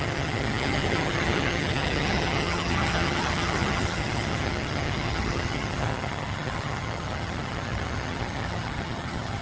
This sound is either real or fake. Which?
fake